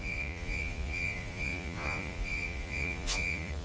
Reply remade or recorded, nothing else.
remade